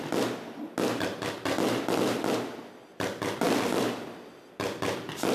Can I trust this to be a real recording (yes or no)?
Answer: yes